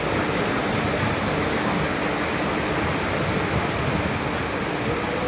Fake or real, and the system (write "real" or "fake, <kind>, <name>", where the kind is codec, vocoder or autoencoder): real